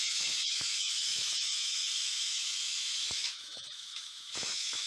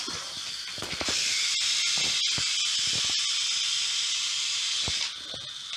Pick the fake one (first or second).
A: first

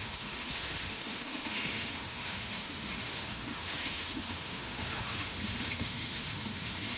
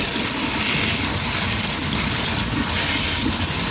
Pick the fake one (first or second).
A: first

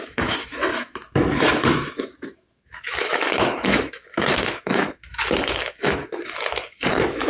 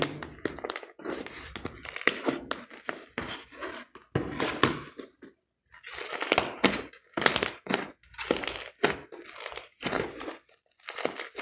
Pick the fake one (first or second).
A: first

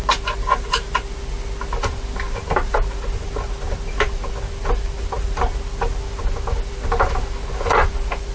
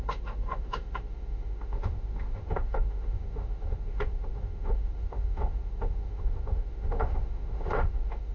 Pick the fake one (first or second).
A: second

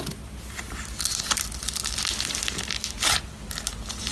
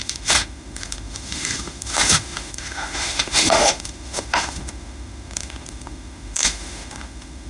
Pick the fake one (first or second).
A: second